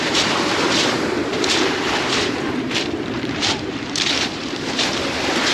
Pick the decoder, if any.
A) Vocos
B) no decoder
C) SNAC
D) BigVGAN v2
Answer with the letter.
D